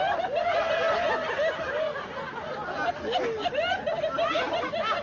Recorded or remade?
recorded